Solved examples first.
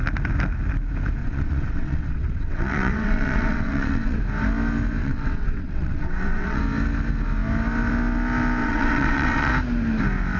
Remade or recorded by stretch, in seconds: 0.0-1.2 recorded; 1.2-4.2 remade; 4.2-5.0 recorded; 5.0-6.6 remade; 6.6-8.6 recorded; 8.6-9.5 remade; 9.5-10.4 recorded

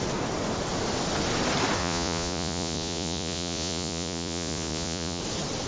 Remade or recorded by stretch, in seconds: 0.0-1.8 recorded; 1.8-5.2 remade; 5.2-5.7 recorded